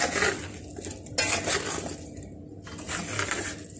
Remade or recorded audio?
recorded